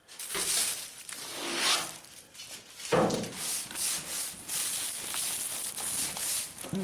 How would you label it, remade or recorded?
recorded